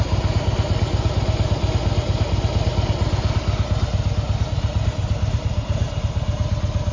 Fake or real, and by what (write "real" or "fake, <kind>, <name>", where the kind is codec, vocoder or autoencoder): real